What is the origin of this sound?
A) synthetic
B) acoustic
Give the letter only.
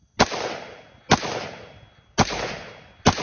B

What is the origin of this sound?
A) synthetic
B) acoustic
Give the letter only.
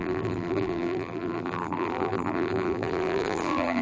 A